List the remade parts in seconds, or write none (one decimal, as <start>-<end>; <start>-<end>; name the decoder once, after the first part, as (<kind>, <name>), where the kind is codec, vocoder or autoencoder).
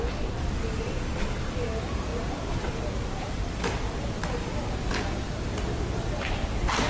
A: 2.1-3.5 (vocoder, BigVGAN v2)